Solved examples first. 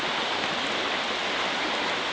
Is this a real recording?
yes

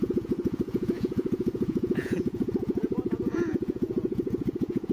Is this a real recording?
no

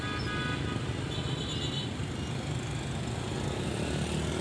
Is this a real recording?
yes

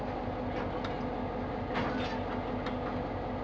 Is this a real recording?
yes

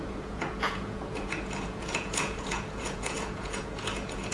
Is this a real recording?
no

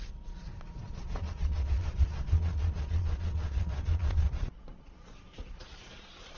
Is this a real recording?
no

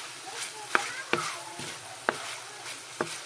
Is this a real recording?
yes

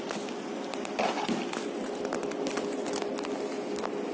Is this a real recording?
yes